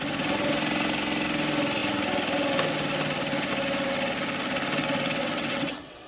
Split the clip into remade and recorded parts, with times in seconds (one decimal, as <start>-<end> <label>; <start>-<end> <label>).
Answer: 0.0-4.8 recorded; 4.8-6.1 remade